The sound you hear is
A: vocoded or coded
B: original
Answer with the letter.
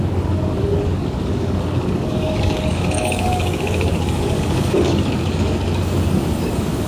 A